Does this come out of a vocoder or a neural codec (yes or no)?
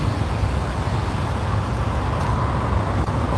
no